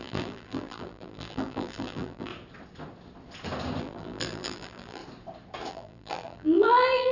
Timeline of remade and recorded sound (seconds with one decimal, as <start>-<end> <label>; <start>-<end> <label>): 0.0-2.3 remade; 2.3-3.8 recorded; 3.8-5.0 remade; 5.0-5.7 recorded; 5.7-7.1 remade